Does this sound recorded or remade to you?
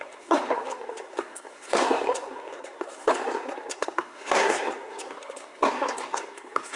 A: remade